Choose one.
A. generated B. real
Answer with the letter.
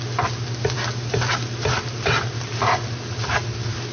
B